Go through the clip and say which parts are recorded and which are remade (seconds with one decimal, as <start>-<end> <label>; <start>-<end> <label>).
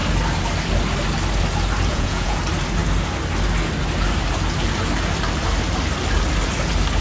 0.0-1.9 recorded; 1.9-2.4 remade; 2.4-7.0 recorded